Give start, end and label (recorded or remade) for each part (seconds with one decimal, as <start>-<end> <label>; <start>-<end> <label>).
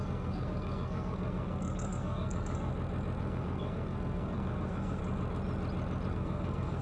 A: 0.0-2.7 remade; 2.7-3.2 recorded; 3.2-5.0 remade; 5.0-6.1 recorded; 6.1-6.8 remade